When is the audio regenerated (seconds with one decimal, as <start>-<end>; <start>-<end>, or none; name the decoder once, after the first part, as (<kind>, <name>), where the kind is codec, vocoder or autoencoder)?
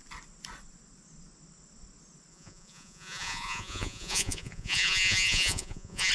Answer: 2.3-6.1 (vocoder, Vocos)